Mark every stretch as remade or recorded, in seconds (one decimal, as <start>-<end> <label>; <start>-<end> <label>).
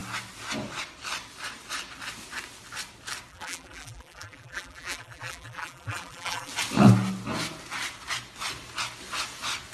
0.0-3.3 recorded; 3.3-6.5 remade; 6.5-9.7 recorded